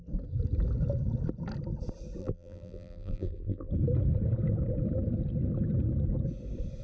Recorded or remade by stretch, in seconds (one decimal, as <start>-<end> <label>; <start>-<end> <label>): 0.0-2.2 recorded; 2.2-3.7 remade; 3.7-6.8 recorded